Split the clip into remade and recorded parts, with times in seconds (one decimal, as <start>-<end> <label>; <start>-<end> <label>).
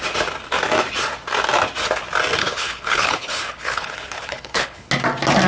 0.0-2.4 recorded; 2.4-4.9 remade; 4.9-5.5 recorded